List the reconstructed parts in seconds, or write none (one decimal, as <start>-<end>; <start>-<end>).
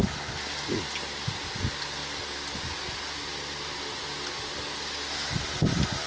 none